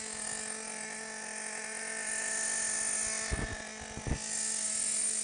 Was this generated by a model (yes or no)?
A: no